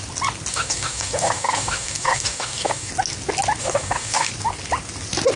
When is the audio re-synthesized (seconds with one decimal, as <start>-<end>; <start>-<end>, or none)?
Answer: 0.5-2.9; 3.6-4.3